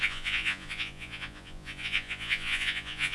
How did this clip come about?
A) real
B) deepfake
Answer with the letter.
B